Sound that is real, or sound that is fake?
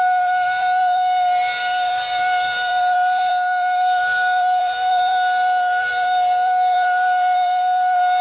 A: fake